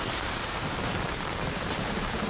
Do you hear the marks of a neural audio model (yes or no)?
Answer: yes